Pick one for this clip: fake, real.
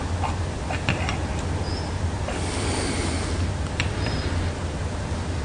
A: real